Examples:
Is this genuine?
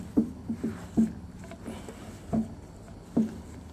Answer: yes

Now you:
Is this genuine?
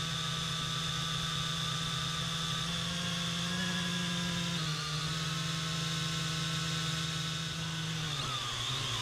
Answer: yes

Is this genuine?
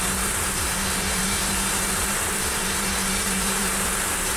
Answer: no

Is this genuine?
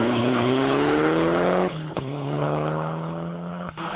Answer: no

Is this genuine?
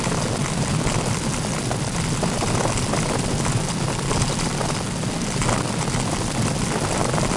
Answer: yes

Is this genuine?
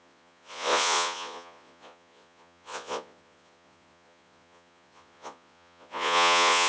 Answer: no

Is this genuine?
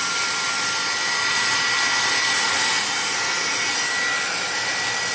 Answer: yes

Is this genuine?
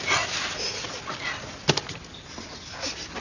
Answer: yes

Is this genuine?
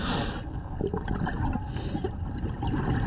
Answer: yes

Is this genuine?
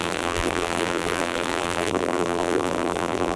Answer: no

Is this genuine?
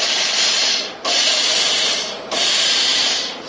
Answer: no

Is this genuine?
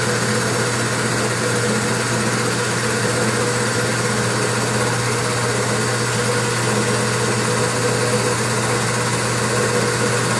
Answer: yes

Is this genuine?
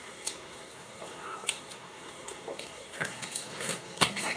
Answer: no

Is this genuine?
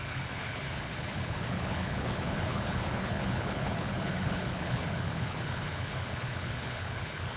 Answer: no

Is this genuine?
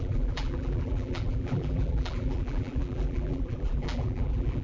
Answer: no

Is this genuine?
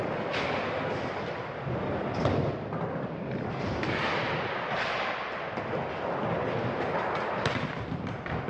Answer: yes